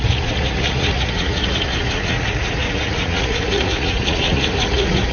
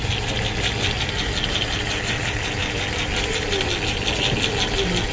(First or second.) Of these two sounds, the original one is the second